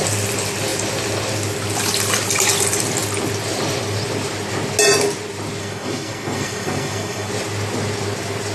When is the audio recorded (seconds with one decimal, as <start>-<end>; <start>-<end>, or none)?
0.0-5.6; 7.3-8.5